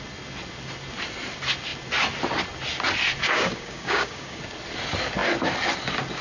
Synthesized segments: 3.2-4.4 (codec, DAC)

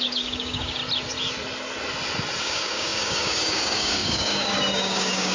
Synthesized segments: 0.0-0.8 (codec, DAC); 2.4-5.3

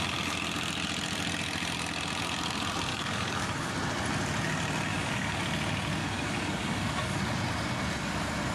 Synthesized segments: 2.9-3.7 (codec, DAC); 4.9-5.4; 6.0-7.2